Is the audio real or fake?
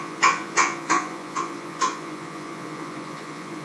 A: fake